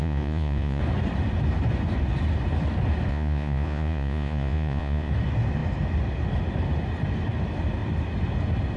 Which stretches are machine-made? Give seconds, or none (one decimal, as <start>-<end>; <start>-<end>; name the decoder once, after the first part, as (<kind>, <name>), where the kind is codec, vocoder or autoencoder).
0.0-0.8 (vocoder, Vocos); 3.1-5.1